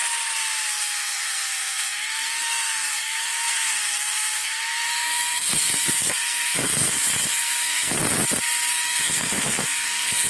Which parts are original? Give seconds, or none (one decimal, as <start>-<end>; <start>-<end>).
0.0-0.7; 8.0-8.7